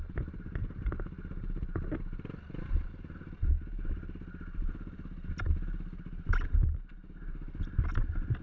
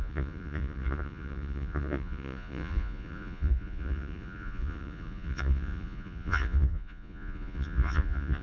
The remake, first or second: second